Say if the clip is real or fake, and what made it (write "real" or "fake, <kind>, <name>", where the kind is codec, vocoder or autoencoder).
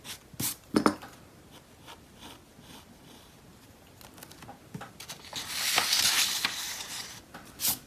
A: real